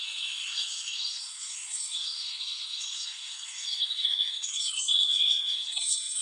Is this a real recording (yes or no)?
no